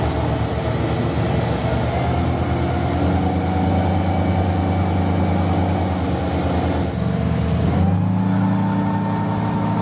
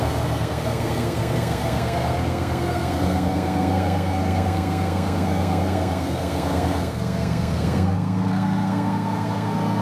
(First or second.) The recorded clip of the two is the first